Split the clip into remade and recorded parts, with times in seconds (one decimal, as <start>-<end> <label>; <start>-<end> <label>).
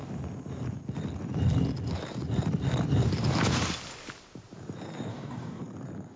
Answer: 0.0-5.1 recorded; 5.1-5.6 remade; 5.6-6.2 recorded